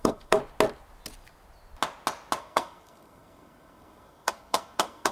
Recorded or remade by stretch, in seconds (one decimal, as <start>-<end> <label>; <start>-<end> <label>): 0.0-0.4 remade; 0.4-2.4 recorded; 2.4-5.1 remade